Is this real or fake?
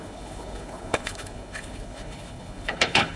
fake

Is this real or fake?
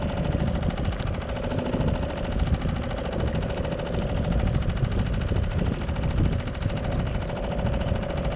real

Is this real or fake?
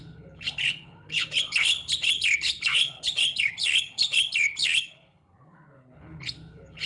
fake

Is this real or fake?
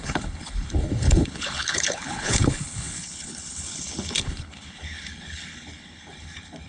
fake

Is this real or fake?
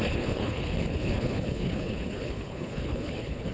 fake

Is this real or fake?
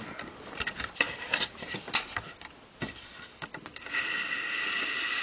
real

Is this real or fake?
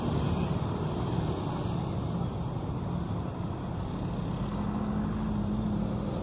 real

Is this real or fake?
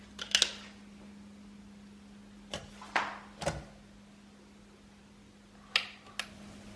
real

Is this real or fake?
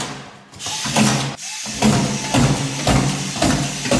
real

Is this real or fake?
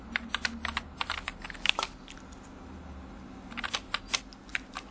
real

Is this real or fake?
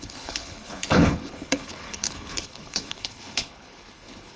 fake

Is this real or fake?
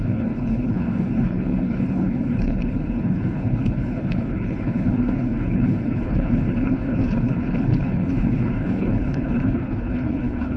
fake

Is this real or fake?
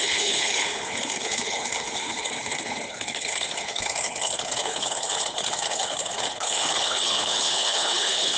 fake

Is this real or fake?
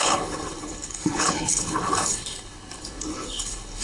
fake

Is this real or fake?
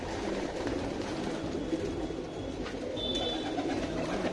real